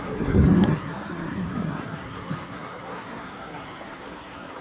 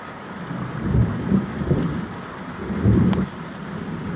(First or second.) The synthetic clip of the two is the first